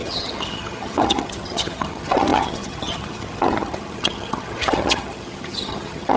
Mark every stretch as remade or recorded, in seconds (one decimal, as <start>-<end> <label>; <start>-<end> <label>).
0.0-6.2 remade